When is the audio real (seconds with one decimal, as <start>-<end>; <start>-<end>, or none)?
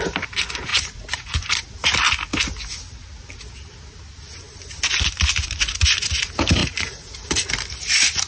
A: 0.0-0.7; 1.5-6.6; 7.5-8.3